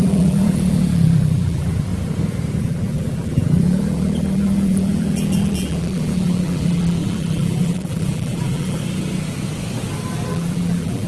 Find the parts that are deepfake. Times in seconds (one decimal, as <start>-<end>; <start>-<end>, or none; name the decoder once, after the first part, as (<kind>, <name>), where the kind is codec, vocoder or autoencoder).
0.0-1.9 (vocoder, BigVGAN v2); 2.6-8.8; 10.3-11.1